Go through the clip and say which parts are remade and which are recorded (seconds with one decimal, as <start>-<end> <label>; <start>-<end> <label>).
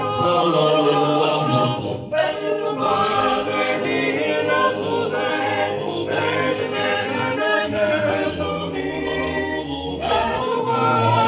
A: 0.0-3.8 remade; 3.8-5.3 recorded; 5.3-11.3 remade